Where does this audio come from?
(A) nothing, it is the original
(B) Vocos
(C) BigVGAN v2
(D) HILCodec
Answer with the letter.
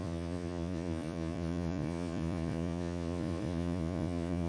B